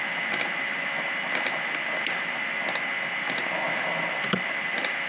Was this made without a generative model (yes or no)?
yes